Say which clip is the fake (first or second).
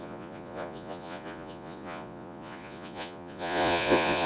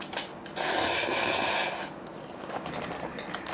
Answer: first